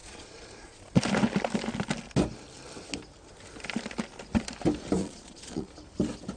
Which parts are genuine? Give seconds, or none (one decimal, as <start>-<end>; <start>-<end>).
1.0-5.0; 5.7-6.4